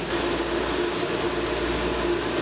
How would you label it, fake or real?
real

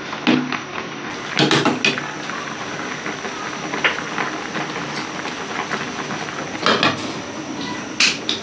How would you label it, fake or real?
real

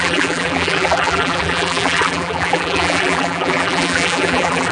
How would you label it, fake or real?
fake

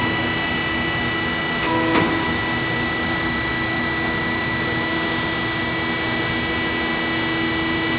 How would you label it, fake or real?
real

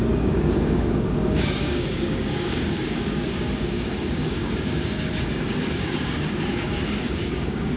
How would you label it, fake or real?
fake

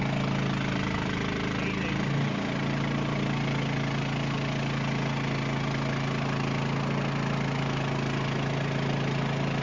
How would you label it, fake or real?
real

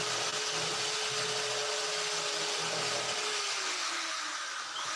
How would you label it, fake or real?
real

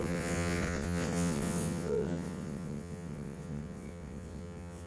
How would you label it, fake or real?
fake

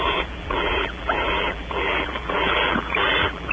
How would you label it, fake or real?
fake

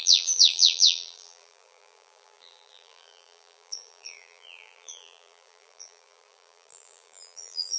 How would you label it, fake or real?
fake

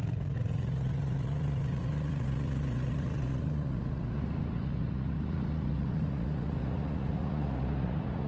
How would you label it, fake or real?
fake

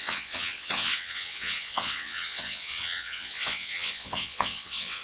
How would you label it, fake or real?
fake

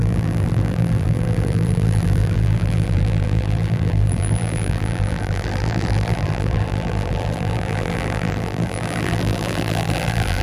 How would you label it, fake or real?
fake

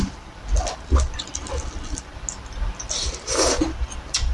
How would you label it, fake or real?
real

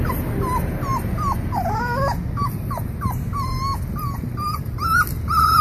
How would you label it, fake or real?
real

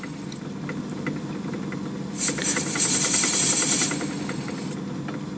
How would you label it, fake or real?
real